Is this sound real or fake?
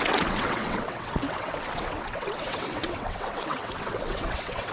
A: fake